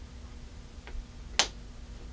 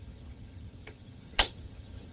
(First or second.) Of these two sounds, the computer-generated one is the second